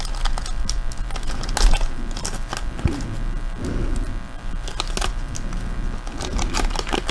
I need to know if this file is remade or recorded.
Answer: recorded